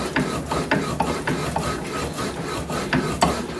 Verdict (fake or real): real